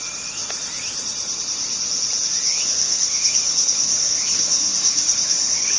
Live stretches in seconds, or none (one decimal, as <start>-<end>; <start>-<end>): 0.0-2.5